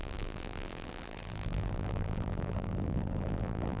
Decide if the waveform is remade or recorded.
remade